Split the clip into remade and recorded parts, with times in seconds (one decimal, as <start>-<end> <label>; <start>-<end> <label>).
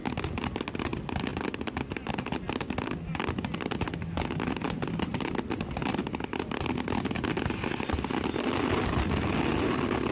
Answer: 0.0-10.1 recorded